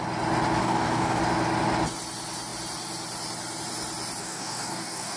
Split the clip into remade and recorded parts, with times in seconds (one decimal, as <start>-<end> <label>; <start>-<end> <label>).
0.0-0.6 recorded; 0.6-1.2 remade; 1.2-4.2 recorded; 4.2-5.2 remade

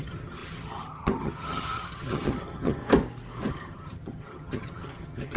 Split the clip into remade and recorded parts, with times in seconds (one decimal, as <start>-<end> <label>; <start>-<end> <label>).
0.0-2.8 remade; 2.8-3.5 recorded; 3.5-5.4 remade

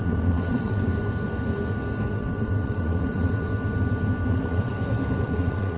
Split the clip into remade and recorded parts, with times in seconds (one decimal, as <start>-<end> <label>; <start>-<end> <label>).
0.0-0.9 remade; 0.9-2.1 recorded; 2.1-3.5 remade; 3.5-4.3 recorded; 4.3-4.7 remade; 4.7-5.2 recorded; 5.2-5.8 remade

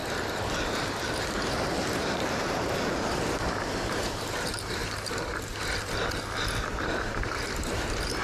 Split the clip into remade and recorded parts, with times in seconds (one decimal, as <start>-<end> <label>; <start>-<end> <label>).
0.0-1.5 recorded; 1.5-4.8 remade; 4.8-6.8 recorded; 6.8-8.2 remade

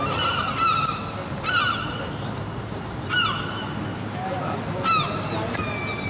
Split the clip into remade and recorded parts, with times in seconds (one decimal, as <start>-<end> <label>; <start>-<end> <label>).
0.0-1.6 recorded; 1.6-3.6 remade; 3.6-6.1 recorded

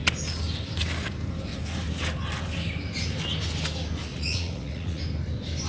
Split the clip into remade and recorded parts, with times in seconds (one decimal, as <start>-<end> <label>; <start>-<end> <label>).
0.0-4.1 recorded; 4.1-5.0 remade; 5.0-5.7 recorded

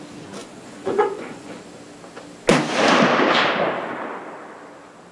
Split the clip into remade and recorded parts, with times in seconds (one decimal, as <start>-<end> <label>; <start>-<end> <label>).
0.0-0.4 recorded; 0.4-1.6 remade; 1.6-5.1 recorded